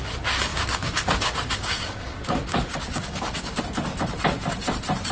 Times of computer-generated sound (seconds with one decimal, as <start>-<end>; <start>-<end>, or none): 0.5-3.6